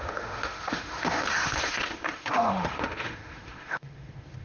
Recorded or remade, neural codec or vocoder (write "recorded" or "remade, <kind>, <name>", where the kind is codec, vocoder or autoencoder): remade, autoencoder, DAC-VAE